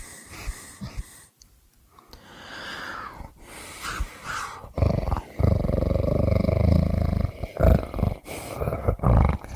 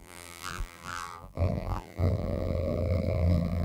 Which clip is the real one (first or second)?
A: first